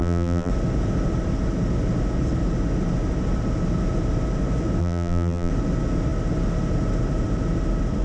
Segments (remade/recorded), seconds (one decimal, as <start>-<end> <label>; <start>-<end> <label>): 0.0-0.5 remade; 0.5-4.8 recorded; 4.8-5.5 remade; 5.5-8.0 recorded